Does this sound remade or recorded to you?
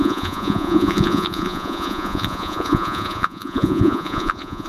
remade